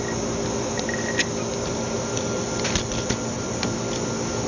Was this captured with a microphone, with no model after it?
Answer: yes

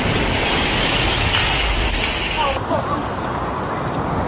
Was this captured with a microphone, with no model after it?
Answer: yes